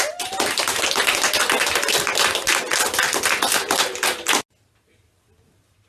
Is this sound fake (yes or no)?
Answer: no